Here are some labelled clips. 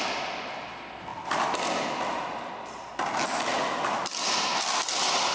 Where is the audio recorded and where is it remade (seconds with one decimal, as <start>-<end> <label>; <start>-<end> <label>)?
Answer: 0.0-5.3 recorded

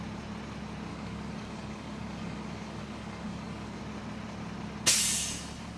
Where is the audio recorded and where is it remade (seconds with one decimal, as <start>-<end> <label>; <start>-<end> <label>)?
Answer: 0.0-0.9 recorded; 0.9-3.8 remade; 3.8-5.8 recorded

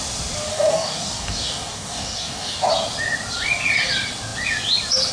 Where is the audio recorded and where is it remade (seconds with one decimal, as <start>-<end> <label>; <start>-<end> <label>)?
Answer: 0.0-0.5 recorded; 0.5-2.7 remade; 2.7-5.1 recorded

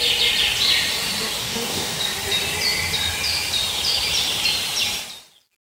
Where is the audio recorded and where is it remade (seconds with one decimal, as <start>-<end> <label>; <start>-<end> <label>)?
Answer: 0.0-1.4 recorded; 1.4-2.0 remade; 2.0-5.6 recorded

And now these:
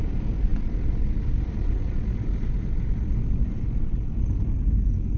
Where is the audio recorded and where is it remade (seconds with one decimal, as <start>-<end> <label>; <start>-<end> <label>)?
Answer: 0.0-5.2 recorded

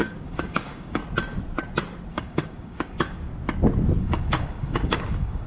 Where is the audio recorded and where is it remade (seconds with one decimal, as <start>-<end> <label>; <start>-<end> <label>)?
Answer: 0.0-1.0 remade; 1.0-2.1 recorded; 2.1-3.3 remade; 3.3-4.0 recorded; 4.0-5.5 remade

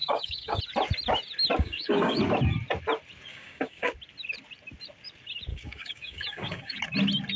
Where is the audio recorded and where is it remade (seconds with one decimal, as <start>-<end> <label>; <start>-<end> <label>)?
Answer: 0.0-0.6 remade; 0.6-1.6 recorded; 1.6-2.2 remade; 2.2-3.3 recorded; 3.3-3.9 remade; 3.9-5.5 recorded; 5.5-6.8 remade; 6.8-7.4 recorded